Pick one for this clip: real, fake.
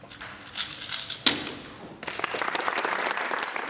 real